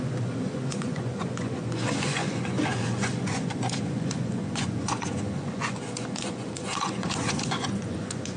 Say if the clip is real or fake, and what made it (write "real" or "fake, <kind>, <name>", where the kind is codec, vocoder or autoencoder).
fake, vocoder, Vocos